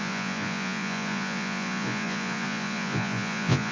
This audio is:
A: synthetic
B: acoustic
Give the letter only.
A